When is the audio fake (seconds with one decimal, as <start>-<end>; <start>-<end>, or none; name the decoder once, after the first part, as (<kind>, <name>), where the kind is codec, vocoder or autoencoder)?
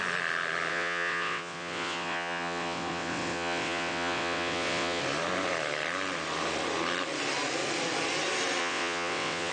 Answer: 0.7-5.0 (vocoder, WaveNeXt); 8.6-9.5